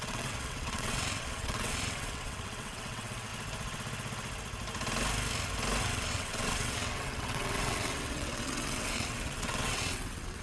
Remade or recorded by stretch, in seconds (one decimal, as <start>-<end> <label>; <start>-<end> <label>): 0.0-3.3 remade; 3.3-5.8 recorded; 5.8-10.4 remade